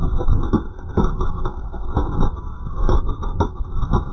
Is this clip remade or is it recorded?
remade